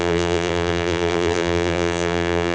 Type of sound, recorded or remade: remade